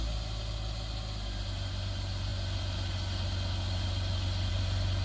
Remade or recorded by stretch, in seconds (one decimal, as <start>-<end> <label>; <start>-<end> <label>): 0.0-5.0 recorded